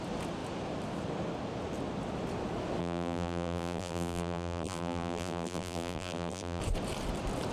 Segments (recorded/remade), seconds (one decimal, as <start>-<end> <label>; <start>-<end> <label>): 0.0-2.8 recorded; 2.8-6.6 remade; 6.6-7.5 recorded